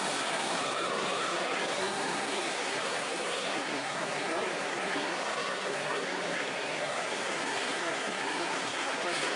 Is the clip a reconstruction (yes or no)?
yes